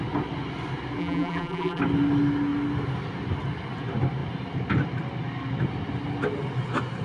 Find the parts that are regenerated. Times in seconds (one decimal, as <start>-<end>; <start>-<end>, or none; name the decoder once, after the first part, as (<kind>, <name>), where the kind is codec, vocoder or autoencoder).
1.0-1.8 (vocoder, BigVGAN v2)